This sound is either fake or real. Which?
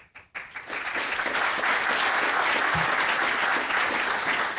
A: real